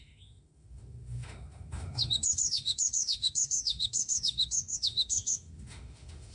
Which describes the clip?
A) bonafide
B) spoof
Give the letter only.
B